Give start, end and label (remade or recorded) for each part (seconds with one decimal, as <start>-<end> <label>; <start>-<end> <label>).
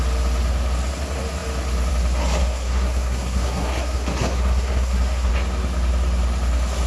0.0-2.4 recorded; 2.4-5.3 remade; 5.3-6.9 recorded